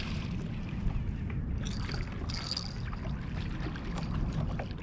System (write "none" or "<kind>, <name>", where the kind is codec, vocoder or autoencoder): none